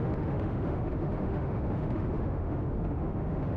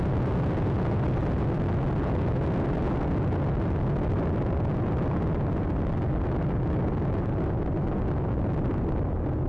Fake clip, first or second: first